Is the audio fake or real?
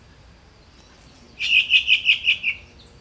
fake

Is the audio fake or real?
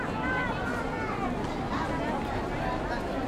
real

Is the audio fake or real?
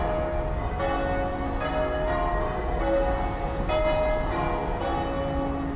real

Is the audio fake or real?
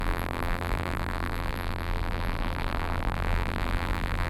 fake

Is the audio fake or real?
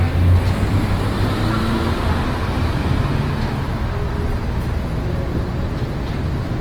real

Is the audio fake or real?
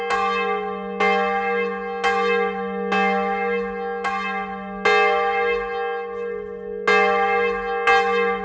real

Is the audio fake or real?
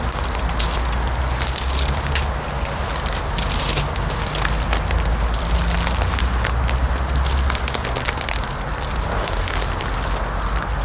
real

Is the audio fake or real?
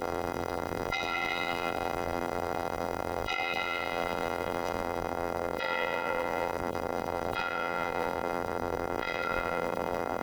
fake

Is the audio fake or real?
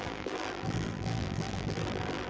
fake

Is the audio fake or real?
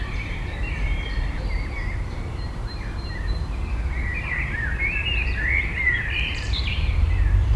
fake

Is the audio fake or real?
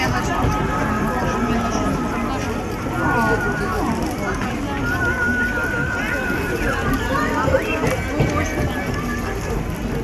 real